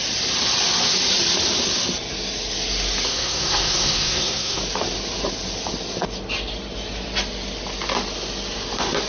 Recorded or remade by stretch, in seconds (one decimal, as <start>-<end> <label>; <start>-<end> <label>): 0.0-3.1 recorded; 3.1-4.6 remade; 4.6-9.1 recorded